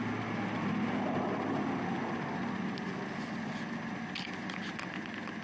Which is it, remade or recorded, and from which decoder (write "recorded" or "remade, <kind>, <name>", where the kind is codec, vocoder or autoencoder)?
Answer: recorded